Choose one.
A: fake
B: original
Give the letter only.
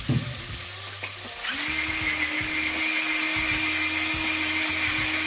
B